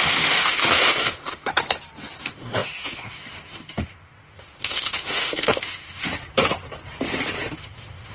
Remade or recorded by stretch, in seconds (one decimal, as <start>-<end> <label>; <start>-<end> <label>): 0.0-1.5 remade; 1.5-2.2 recorded; 2.2-6.1 remade; 6.1-7.5 recorded; 7.5-8.1 remade